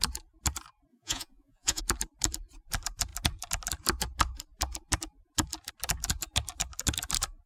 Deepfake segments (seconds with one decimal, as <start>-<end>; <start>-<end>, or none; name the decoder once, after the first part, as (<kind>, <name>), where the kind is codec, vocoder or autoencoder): 0.9-1.8 (vocoder, Vocos)